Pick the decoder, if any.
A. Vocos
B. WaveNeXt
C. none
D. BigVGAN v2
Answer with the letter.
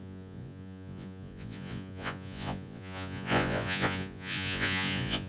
A